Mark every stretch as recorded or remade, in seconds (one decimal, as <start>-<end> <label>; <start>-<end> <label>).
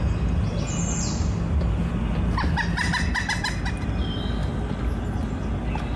0.0-6.0 recorded